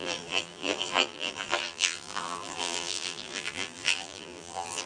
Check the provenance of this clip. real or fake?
fake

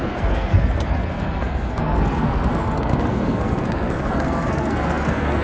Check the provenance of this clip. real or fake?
fake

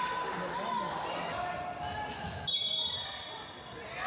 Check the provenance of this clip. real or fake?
real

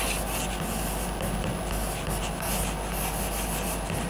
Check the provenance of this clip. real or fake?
real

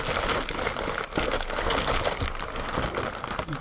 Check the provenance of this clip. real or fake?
real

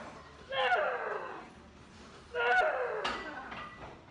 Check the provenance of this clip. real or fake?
real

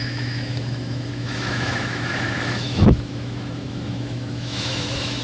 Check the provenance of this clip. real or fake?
fake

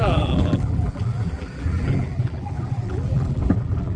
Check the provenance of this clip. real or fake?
fake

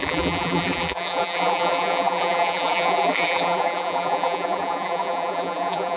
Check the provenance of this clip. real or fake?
fake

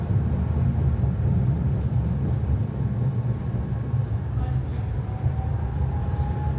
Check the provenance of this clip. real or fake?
real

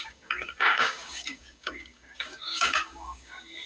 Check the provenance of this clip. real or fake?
fake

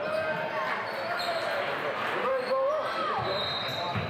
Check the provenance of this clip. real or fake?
real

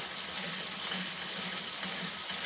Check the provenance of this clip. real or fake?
real